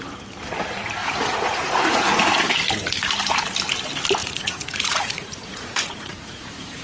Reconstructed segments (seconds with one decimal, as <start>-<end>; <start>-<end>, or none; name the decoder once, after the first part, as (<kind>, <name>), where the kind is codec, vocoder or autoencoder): 1.0-2.0 (vocoder, Vocos); 4.2-6.8